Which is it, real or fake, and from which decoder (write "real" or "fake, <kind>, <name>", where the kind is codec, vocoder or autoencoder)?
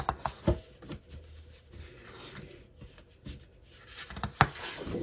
real